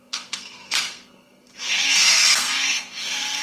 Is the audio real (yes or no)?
no